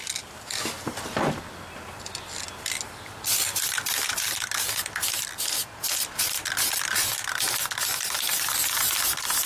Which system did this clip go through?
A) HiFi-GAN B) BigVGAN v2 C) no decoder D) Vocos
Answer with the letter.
C